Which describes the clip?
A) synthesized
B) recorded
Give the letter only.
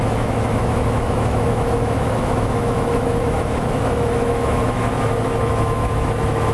A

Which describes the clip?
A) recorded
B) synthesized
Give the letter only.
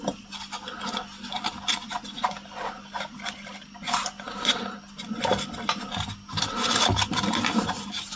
A